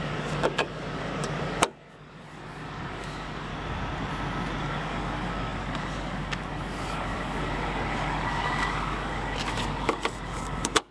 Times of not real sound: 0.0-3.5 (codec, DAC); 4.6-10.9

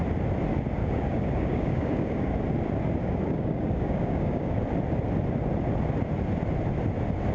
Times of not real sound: 0.8-2.3 (codec, DAC); 3.0-4.6

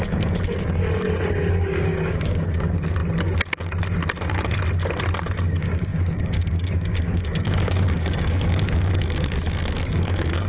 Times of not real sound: 0.0-0.8 (codec, DAC); 1.5-3.0; 5.4-10.5

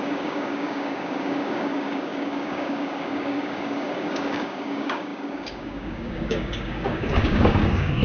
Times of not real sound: 0.0-8.0 (codec, DAC)

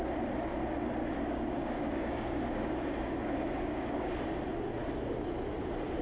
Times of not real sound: 1.0-4.1 (codec, DAC)

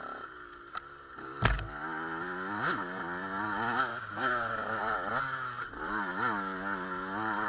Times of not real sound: 3.9-4.8 (codec, DAC)

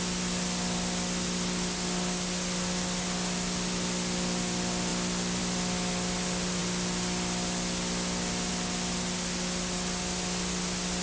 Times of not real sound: none